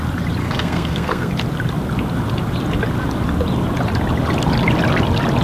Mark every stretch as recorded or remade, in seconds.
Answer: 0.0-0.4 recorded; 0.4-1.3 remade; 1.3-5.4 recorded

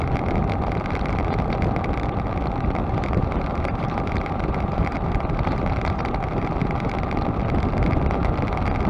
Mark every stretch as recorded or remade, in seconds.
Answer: 0.0-2.9 recorded; 2.9-6.9 remade; 6.9-8.9 recorded

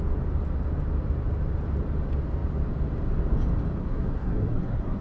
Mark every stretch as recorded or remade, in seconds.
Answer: 0.0-3.8 recorded; 3.8-5.0 remade

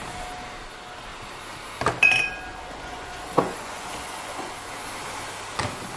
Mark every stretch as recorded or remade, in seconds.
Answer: 0.0-2.5 recorded; 2.5-4.5 remade; 4.5-6.0 recorded